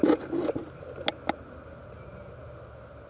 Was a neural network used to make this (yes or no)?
no